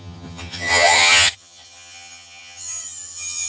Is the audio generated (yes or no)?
yes